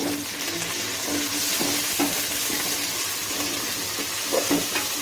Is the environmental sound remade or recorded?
recorded